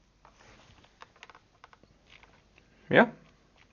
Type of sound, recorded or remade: recorded